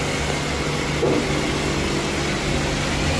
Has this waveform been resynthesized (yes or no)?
no